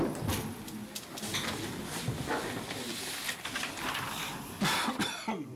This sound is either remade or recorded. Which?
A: recorded